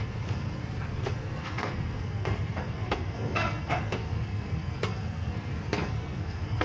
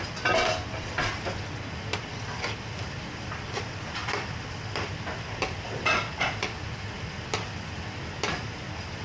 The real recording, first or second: second